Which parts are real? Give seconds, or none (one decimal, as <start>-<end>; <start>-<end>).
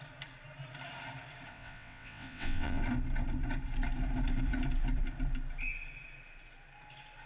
0.0-1.5; 2.8-7.3